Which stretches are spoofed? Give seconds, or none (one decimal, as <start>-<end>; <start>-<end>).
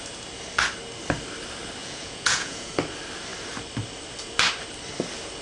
1.8-2.7